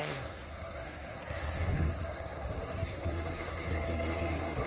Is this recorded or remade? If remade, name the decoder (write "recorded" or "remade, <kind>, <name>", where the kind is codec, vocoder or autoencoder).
remade, codec, SNAC